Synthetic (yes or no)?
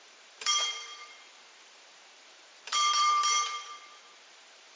yes